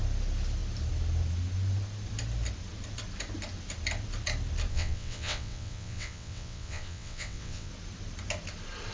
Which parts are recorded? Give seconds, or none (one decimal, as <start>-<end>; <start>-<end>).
0.0-4.7; 7.7-8.9